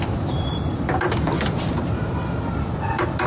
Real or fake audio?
real